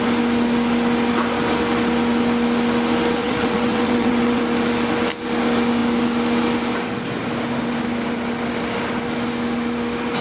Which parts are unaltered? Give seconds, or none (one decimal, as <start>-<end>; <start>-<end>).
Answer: 0.0-3.2; 4.4-10.2